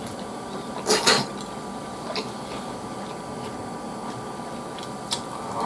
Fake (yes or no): no